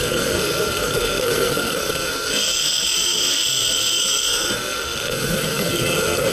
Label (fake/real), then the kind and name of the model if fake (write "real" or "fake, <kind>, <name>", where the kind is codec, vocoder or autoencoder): fake, codec, SNAC